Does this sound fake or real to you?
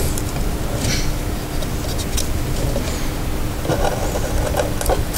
real